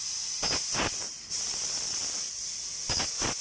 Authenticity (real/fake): real